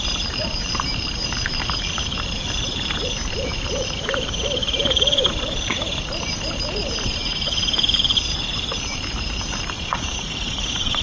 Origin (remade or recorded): remade